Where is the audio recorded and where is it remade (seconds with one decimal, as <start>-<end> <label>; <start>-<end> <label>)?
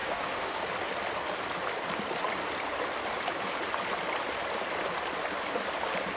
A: 0.0-0.6 remade; 0.6-6.2 recorded